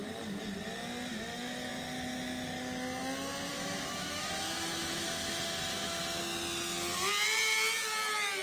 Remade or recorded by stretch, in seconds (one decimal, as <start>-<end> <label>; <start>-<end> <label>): 0.0-1.1 recorded; 1.1-1.7 remade; 1.7-3.5 recorded; 3.5-6.2 remade; 6.2-8.4 recorded